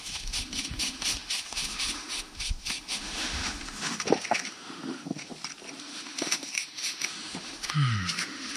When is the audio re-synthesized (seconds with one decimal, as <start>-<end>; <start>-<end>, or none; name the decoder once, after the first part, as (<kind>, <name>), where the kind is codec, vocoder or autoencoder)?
0.0-5.3 (autoencoder, DAC-VAE); 5.8-8.6